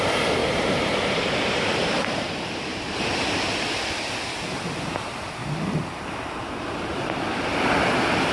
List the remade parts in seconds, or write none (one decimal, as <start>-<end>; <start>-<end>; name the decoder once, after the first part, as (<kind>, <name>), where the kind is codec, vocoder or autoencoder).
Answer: 0.4-3.8 (vocoder, BigVGAN v2)